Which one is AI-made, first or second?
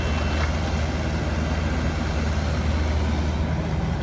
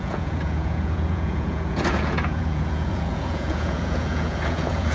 second